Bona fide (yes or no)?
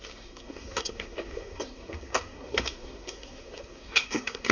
no